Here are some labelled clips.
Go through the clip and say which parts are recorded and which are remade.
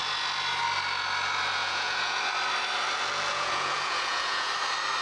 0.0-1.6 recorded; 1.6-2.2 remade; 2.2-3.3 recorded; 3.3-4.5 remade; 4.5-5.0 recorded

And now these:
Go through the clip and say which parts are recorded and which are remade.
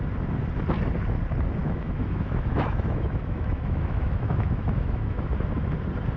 0.0-1.6 recorded; 1.6-5.3 remade; 5.3-6.2 recorded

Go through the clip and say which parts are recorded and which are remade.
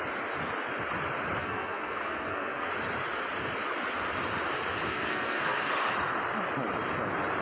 0.0-1.4 recorded; 1.4-2.7 remade; 2.7-4.9 recorded; 4.9-5.7 remade; 5.7-7.4 recorded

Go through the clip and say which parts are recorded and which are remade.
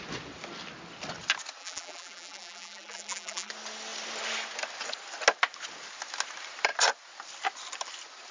0.0-1.6 recorded; 1.6-3.5 remade; 3.5-8.3 recorded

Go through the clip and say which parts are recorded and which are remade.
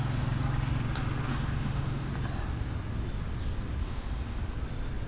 0.0-1.3 recorded; 1.3-2.1 remade; 2.1-3.8 recorded; 3.8-4.4 remade; 4.4-5.1 recorded